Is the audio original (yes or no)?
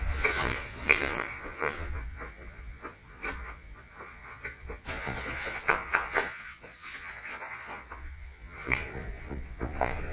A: no